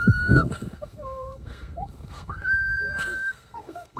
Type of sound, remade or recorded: remade